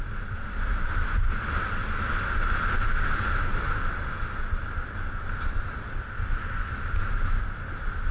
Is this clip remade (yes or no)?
no